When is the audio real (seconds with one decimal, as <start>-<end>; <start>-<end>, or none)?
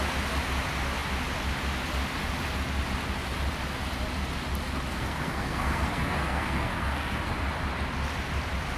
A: 0.0-4.9; 7.3-8.8